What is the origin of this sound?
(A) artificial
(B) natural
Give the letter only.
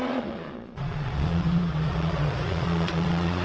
A